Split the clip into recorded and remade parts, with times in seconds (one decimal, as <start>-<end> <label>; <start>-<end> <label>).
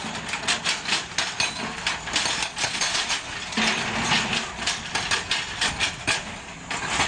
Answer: 0.0-2.5 recorded; 2.5-3.1 remade; 3.1-7.1 recorded